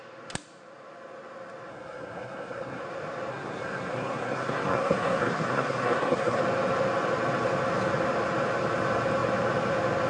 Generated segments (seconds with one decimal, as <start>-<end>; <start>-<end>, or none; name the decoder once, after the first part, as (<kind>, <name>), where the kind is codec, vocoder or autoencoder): 1.7-2.8 (codec, SNAC); 3.3-6.4